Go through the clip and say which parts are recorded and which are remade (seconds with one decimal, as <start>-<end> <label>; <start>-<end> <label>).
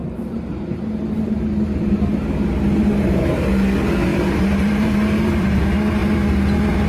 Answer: 0.0-3.4 remade; 3.4-4.1 recorded; 4.1-5.6 remade; 5.6-6.9 recorded